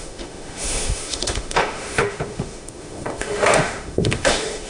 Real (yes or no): no